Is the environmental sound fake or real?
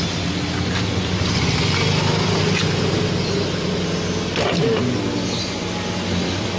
real